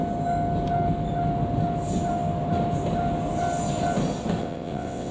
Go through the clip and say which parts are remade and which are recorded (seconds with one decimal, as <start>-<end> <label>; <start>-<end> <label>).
0.0-4.4 recorded; 4.4-5.1 remade